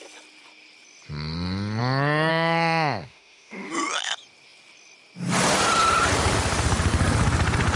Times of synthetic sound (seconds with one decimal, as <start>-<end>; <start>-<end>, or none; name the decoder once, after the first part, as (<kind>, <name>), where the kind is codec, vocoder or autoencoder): 2.3-3.7 (autoencoder, DAC-VAE)